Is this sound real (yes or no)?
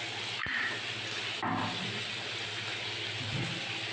yes